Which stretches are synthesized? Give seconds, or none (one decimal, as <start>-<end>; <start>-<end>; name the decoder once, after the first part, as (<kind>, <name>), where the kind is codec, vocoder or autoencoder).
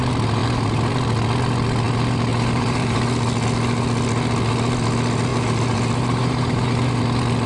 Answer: 0.4-0.9 (vocoder, BigVGAN v2); 2.3-3.0; 5.3-7.0